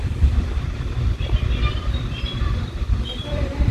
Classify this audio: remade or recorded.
remade